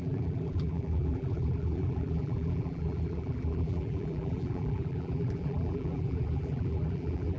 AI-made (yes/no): yes